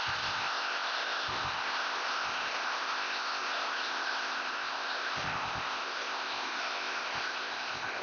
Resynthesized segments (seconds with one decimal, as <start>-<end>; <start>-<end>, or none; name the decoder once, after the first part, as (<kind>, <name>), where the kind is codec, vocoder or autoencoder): 0.0-8.0 (codec, ZipCodec)